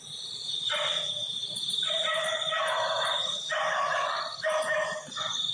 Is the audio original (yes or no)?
yes